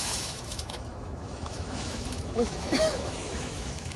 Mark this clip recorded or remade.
remade